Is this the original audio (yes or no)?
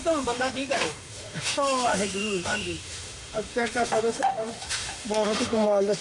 no